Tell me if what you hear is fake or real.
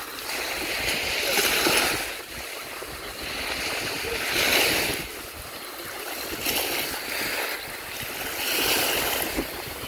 real